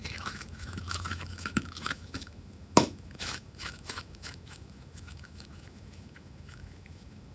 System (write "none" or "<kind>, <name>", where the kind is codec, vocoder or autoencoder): autoencoder, DAC-VAE